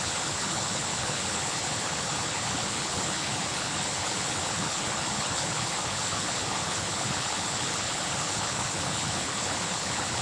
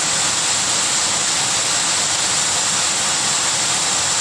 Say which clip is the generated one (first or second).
first